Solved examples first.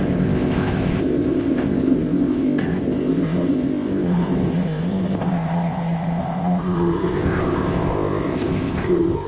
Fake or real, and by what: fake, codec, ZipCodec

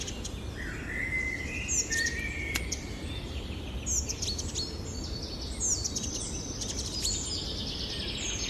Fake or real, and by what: real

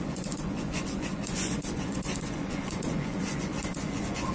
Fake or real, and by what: fake, vocoder, Vocos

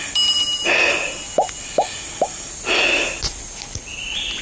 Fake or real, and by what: real